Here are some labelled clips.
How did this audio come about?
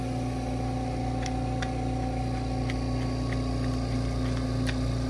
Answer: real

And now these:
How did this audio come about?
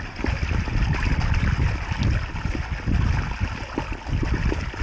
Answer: real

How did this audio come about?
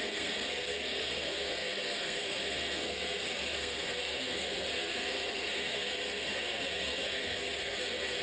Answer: fake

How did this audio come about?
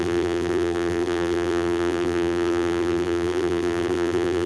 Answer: fake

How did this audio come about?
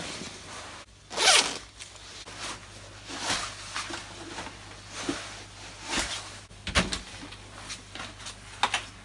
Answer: real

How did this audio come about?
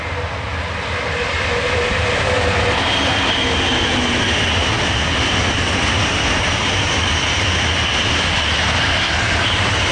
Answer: real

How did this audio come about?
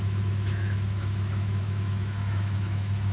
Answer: fake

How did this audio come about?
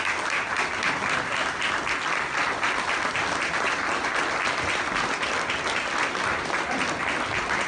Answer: real